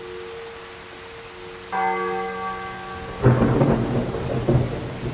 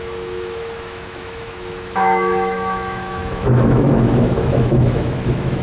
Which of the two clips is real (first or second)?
first